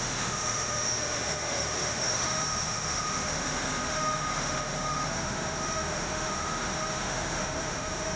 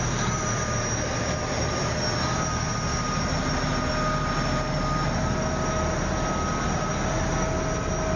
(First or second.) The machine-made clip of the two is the first